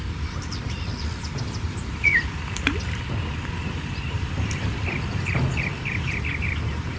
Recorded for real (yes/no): no